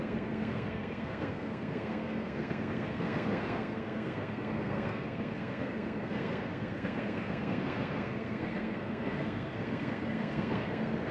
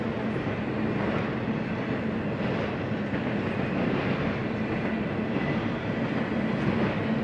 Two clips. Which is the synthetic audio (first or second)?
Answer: first